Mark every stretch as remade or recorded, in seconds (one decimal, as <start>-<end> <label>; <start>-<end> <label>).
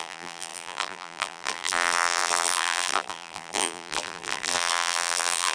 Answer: 0.0-5.5 remade